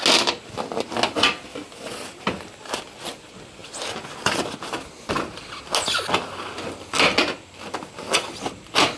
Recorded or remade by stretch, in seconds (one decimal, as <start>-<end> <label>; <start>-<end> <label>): 0.0-9.0 recorded